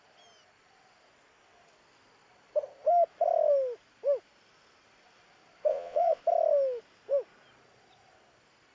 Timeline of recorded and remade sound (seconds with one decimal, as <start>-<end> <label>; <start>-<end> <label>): 0.0-5.7 recorded; 5.7-6.2 remade; 6.2-8.7 recorded